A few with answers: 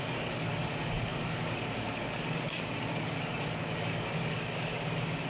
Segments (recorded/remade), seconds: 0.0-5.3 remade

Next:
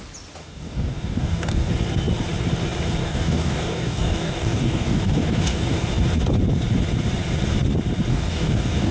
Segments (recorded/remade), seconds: 0.0-0.4 recorded; 0.4-1.7 remade; 1.7-3.0 recorded; 3.0-5.9 remade; 5.9-8.1 recorded; 8.1-8.9 remade

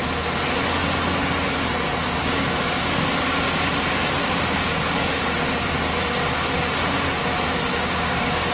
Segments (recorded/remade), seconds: 0.0-2.2 recorded; 2.2-3.8 remade; 3.8-4.2 recorded; 4.2-5.2 remade; 5.2-7.7 recorded; 7.7-8.5 remade